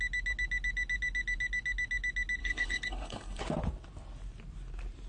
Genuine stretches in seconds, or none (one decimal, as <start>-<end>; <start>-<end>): 0.0-2.4; 3.4-5.1